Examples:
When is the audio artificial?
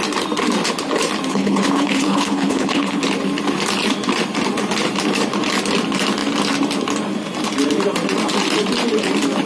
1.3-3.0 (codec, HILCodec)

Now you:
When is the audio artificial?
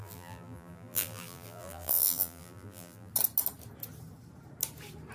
0.0-3.1 (vocoder, BigVGAN v2)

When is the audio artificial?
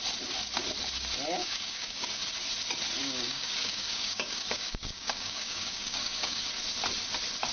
1.4-2.2 (codec, DAC); 3.0-6.4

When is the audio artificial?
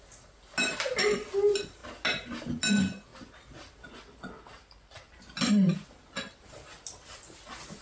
none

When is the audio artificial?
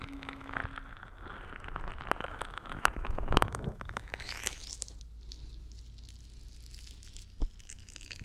0.0-0.6 (autoencoder, DAC-VAE); 2.2-4.6; 7.6-8.2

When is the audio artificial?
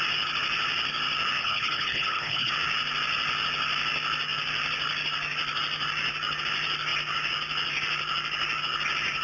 1.4-2.5 (codec, HILCodec)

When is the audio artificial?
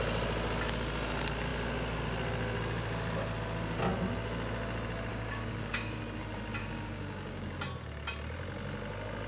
5.1-6.0 (codec, DAC); 6.6-7.6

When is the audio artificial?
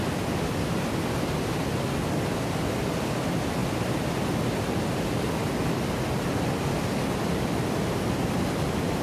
none